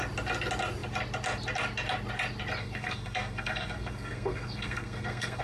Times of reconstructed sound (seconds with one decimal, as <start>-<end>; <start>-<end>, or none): 2.6-5.4